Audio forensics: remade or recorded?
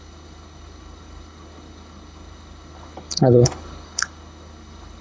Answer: remade